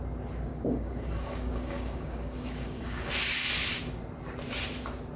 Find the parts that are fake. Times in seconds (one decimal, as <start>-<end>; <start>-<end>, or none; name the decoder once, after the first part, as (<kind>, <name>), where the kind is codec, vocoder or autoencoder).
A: 0.5-3.1 (codec, DAC)